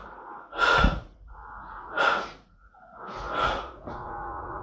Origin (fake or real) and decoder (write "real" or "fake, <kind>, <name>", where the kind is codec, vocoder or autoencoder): fake, vocoder, Vocos